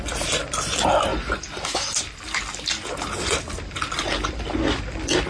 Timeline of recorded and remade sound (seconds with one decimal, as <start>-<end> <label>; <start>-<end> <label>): 0.0-5.3 recorded